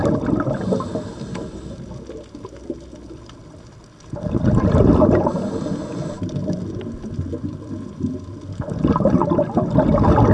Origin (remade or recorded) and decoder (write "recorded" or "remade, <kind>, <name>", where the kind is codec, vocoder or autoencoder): recorded